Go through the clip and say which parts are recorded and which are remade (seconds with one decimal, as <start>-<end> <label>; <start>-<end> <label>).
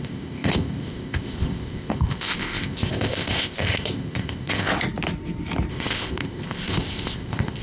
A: 0.0-4.7 remade; 4.7-5.7 recorded; 5.7-7.6 remade